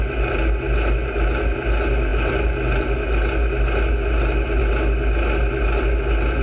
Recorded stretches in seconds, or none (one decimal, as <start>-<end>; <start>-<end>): 0.0-6.4